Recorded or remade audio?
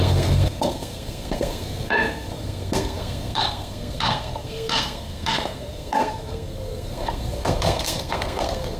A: remade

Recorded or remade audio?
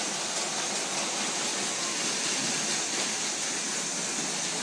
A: recorded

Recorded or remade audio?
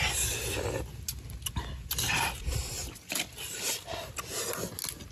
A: recorded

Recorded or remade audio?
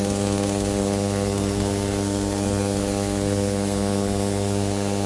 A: remade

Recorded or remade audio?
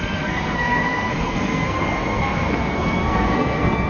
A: remade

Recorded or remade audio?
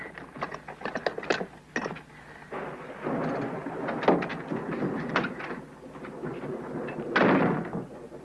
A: recorded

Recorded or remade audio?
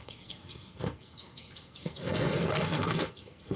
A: remade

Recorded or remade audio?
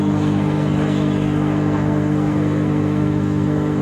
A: remade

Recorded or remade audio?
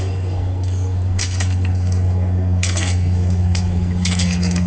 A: remade